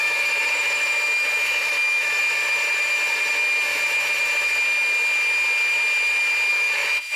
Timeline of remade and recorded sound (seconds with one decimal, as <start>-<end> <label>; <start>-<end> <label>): 0.0-2.2 remade; 2.2-6.5 recorded; 6.5-7.2 remade